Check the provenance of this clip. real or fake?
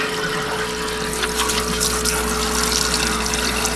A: real